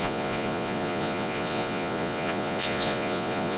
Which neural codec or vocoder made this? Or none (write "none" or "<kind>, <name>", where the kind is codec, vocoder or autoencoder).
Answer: vocoder, Vocos